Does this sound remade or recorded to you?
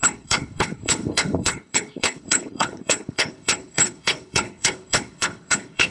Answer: remade